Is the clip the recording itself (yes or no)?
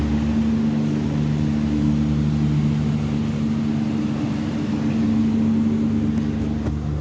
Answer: yes